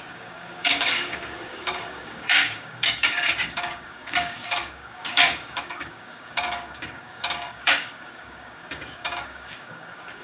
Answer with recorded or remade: remade